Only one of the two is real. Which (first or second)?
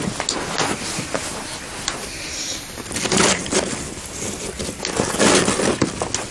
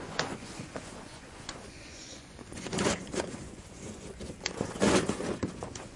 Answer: first